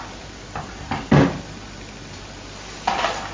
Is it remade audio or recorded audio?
recorded